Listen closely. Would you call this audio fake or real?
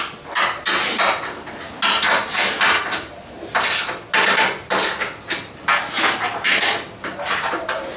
real